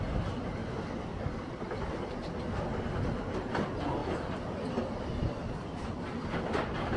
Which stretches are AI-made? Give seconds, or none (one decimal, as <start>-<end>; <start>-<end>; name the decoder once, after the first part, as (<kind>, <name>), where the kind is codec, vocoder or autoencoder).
none